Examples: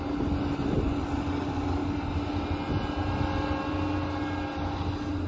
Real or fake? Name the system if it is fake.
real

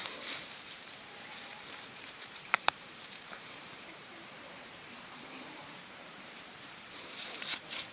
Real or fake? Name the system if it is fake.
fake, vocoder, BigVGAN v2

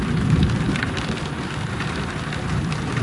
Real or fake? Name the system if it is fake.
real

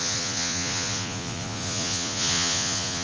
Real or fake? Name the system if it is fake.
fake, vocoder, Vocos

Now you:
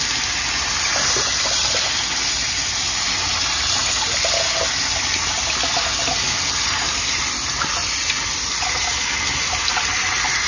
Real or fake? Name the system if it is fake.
real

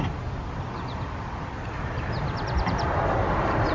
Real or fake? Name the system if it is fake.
fake, vocoder, BigVGAN v2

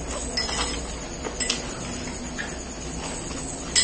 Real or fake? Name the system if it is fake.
real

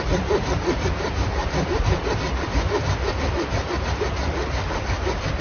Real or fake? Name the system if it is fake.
fake, vocoder, BigVGAN v2